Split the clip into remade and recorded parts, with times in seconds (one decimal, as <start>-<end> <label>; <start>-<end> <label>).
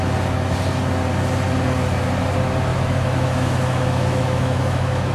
0.0-2.7 recorded; 2.7-5.1 remade